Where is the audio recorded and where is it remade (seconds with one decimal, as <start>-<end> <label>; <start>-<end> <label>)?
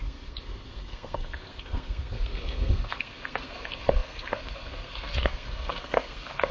0.0-6.5 remade